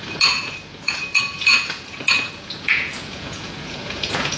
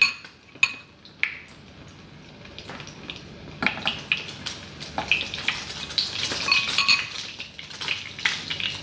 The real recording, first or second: second